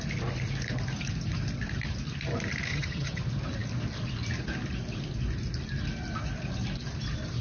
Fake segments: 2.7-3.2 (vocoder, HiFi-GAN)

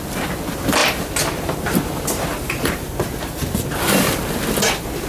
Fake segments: none

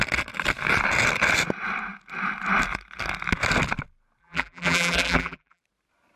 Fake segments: 4.2-5.6 (vocoder, BigVGAN v2)

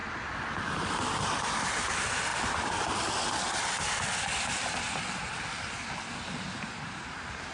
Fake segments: none

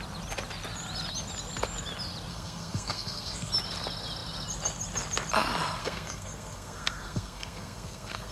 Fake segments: 2.3-3.5 (codec, SNAC); 5.8-8.3